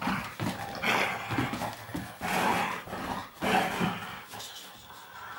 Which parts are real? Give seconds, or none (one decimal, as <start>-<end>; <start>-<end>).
0.0-5.4